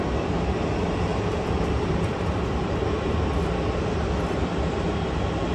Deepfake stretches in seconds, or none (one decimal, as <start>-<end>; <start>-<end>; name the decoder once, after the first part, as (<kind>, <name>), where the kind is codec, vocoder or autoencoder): 1.1-2.9 (vocoder, BigVGAN v2)